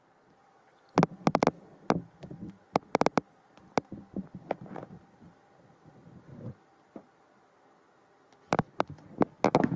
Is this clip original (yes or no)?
yes